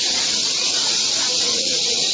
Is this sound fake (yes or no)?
yes